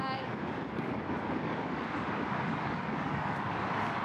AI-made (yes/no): yes